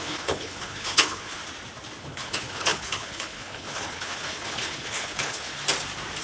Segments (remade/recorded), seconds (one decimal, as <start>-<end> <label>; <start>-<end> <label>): 0.0-1.4 remade; 1.4-2.0 recorded; 2.0-5.5 remade; 5.5-6.2 recorded